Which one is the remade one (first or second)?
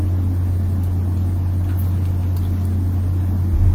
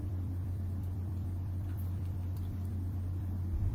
second